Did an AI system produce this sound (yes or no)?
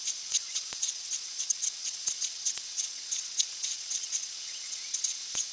yes